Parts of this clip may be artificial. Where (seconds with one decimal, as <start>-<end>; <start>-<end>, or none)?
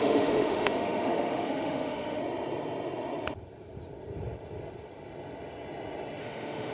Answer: 0.0-2.2; 6.2-6.7